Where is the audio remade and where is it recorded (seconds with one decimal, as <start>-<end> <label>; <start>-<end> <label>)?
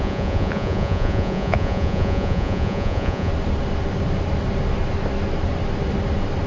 0.0-3.3 remade; 3.3-6.5 recorded